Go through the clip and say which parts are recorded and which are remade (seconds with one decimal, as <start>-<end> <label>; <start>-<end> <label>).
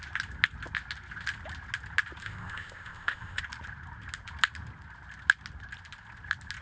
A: 0.0-2.2 recorded; 2.2-3.4 remade; 3.4-6.6 recorded